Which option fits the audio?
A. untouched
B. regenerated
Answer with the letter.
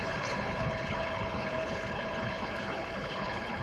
B